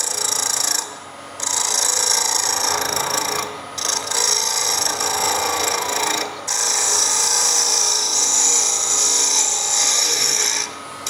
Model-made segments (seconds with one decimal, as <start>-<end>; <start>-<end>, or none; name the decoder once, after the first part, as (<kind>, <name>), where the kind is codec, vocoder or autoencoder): 9.9-10.4 (codec, SNAC)

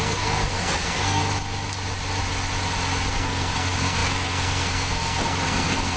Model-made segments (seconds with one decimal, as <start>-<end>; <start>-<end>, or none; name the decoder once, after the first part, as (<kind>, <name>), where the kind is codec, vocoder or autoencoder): 0.0-1.2 (codec, SNAC); 3.1-6.0